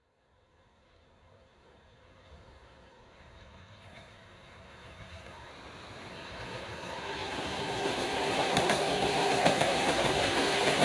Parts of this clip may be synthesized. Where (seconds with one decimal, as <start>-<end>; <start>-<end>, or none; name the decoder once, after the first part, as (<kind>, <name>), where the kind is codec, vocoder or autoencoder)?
0.0-5.5 (codec, SNAC); 6.1-10.8